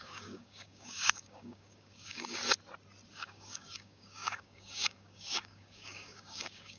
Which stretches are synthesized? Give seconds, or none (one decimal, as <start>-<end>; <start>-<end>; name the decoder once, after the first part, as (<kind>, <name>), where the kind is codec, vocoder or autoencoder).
0.0-2.4 (codec, DAC); 3.1-6.8